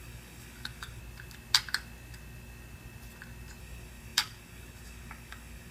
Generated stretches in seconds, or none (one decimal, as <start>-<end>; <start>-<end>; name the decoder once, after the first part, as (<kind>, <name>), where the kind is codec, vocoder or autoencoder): 0.0-1.0 (codec, DAC); 3.6-5.7